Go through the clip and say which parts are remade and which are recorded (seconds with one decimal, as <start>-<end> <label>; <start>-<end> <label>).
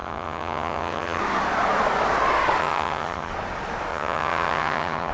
0.0-1.2 remade; 1.2-2.6 recorded; 2.6-3.3 remade; 3.3-3.9 recorded; 3.9-5.1 remade